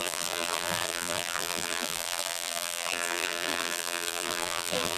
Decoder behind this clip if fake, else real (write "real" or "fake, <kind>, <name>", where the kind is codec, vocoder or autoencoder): fake, vocoder, BigVGAN v2